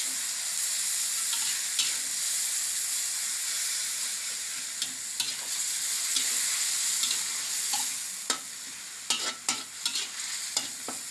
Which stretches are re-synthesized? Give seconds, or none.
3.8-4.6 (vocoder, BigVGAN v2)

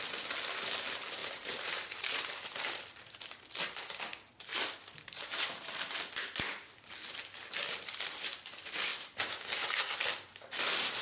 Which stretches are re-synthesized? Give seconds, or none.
1.2-2.5 (vocoder, BigVGAN v2); 4.5-5.9; 8.9-9.9

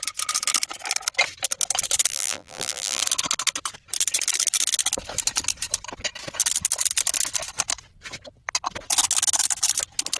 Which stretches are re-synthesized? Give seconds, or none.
2.1-3.0 (vocoder, BigVGAN v2)

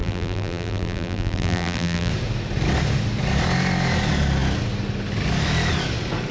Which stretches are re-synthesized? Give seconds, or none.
0.0-2.1 (vocoder, BigVGAN v2)